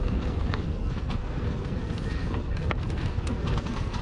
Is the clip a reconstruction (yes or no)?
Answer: yes